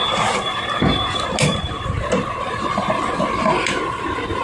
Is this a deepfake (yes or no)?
no